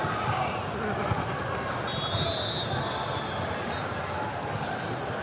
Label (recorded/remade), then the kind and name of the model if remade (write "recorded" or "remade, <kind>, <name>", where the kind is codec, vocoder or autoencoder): recorded